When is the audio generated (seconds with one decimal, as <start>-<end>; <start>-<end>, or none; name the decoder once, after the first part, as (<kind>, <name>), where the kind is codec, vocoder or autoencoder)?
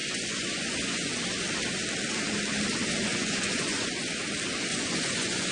0.0-1.2 (vocoder, Vocos); 3.0-4.2; 4.7-5.5